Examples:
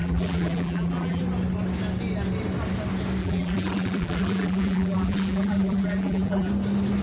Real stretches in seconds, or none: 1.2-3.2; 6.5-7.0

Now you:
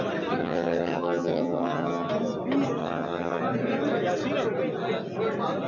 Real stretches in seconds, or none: 0.0-0.4; 2.1-2.8; 3.4-5.7

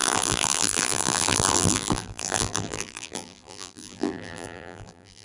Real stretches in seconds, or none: none